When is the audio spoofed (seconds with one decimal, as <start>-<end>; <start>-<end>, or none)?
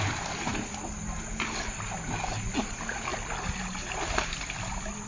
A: none